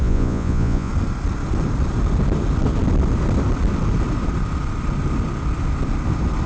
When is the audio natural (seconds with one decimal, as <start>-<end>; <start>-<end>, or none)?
0.9-6.5